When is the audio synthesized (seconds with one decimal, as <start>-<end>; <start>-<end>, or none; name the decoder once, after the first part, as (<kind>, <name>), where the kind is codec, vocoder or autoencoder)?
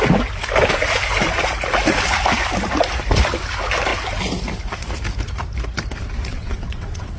6.3-7.2 (vocoder, WaveNeXt)